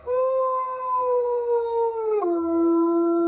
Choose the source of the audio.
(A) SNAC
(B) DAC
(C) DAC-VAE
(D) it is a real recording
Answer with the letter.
A